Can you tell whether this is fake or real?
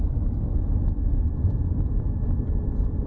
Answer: fake